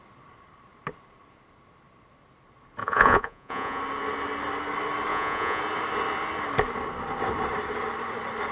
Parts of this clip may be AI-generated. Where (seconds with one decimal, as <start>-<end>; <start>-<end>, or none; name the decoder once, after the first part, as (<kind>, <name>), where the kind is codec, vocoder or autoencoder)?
2.8-3.8 (vocoder, Vocos); 5.1-5.6